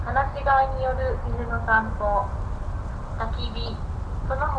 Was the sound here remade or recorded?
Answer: recorded